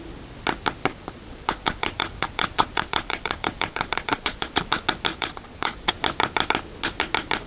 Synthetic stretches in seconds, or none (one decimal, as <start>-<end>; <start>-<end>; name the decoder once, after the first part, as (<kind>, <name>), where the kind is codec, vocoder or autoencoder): 0.9-4.6 (vocoder, Vocos); 5.1-5.9